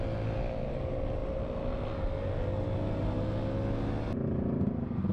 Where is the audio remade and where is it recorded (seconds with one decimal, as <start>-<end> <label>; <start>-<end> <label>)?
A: 0.0-5.1 recorded